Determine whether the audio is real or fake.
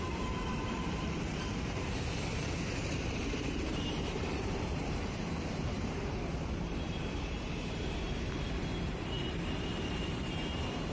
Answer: fake